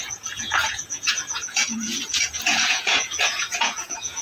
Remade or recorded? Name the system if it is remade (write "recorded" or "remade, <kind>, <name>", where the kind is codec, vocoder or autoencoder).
remade, vocoder, Vocos